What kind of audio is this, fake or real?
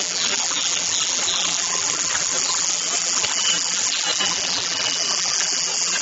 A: fake